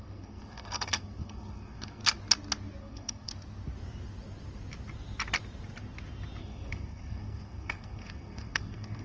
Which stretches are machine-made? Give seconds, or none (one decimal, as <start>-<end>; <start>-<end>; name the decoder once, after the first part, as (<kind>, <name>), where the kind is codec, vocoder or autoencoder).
0.0-2.0 (codec, SNAC); 2.8-3.3; 6.4-9.0